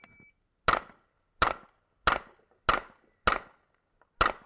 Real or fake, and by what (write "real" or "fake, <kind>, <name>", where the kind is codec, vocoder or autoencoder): real